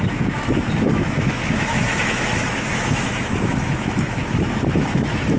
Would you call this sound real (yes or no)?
no